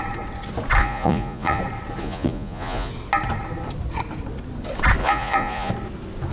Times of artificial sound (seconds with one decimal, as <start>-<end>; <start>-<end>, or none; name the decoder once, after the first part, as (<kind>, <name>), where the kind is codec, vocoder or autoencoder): 0.8-1.6 (vocoder, Vocos); 2.0-2.9; 5.0-5.7